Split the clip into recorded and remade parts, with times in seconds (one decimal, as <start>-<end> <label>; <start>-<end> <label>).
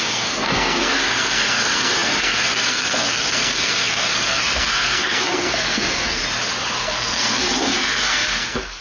0.0-6.2 remade; 6.2-6.8 recorded; 6.8-8.8 remade